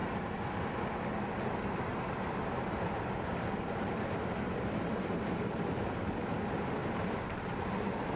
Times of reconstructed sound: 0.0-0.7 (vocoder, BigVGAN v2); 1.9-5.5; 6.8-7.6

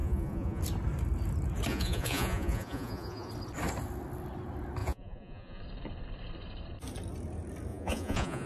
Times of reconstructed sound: 0.0-0.6 (vocoder, Vocos); 1.7-3.3; 4.8-5.6; 7.7-8.5

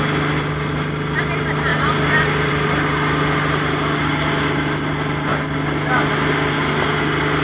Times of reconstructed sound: none

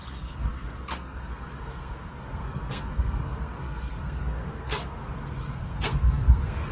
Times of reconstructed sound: 0.0-6.7 (codec, SNAC)

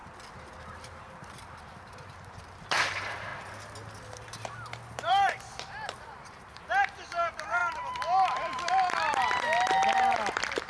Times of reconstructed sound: 0.6-3.3 (vocoder, BigVGAN v2); 4.9-7.6; 10.0-10.7

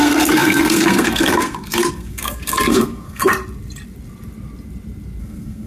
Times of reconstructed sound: 0.0-3.3 (codec, SNAC); 5.2-5.7